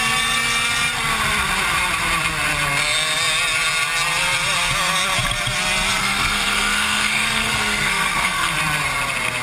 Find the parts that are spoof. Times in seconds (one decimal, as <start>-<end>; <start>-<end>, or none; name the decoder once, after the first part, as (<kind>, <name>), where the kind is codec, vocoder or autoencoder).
6.0-8.5 (codec, SNAC)